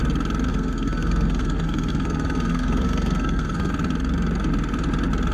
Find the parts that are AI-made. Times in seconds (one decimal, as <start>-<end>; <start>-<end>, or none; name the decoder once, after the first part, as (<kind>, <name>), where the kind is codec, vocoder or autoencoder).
0.5-3.7 (codec, SNAC)